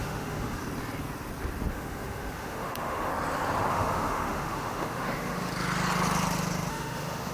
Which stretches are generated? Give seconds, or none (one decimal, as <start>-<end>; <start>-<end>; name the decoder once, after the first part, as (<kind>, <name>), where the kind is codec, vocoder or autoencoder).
0.0-0.6 (autoencoder, DAC-VAE); 1.7-3.1; 3.7-5.5; 6.7-7.3